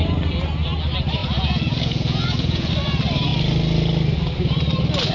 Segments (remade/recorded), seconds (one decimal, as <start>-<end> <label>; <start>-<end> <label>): 0.0-1.2 recorded; 1.2-2.7 remade; 2.7-5.1 recorded